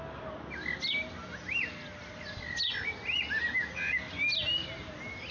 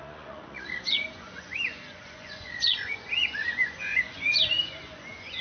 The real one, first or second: first